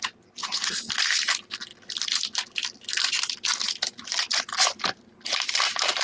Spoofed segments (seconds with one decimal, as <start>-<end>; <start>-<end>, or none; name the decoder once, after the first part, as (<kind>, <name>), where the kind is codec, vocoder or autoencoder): 0.4-0.9 (vocoder, Vocos)